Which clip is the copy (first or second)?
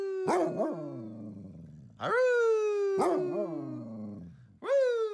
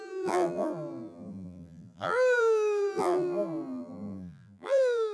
second